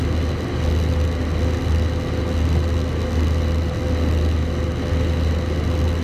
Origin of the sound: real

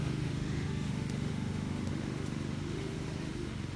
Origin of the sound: fake